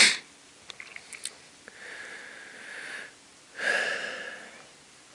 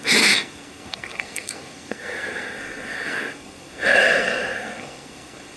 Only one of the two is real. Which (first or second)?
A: first